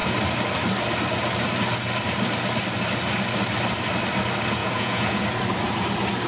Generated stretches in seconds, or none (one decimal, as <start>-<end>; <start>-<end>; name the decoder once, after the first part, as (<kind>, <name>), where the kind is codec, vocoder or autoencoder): 4.6-5.2 (vocoder, Vocos)